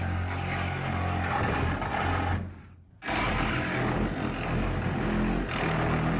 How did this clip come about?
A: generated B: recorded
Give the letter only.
B